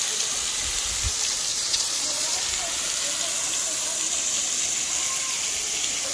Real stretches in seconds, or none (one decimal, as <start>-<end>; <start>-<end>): 0.0-1.5; 2.4-6.1